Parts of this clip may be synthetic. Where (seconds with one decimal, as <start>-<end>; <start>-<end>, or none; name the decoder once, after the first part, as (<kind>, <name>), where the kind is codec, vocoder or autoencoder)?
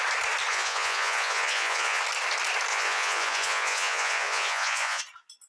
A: 0.5-2.0 (vocoder, Vocos); 2.7-5.0